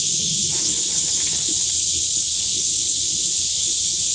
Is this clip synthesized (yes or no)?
yes